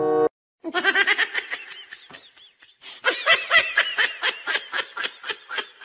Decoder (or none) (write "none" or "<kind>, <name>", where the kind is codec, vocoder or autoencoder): none